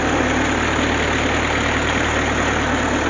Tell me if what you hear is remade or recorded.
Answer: recorded